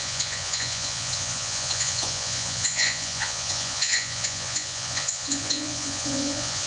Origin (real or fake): fake